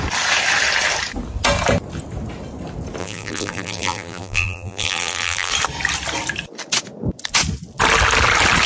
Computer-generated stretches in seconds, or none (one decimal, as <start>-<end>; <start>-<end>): 3.0-5.5